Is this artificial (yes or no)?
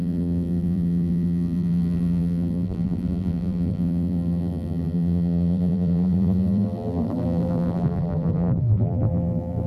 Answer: yes